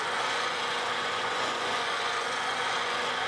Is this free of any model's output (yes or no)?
no